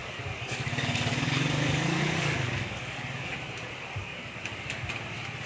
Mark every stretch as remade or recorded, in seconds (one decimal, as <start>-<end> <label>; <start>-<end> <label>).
0.0-3.3 remade; 3.3-4.0 recorded; 4.0-4.9 remade; 4.9-5.5 recorded